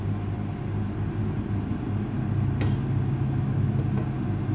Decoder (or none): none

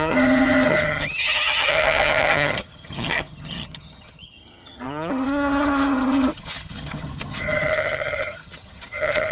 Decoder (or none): vocoder, HiFi-GAN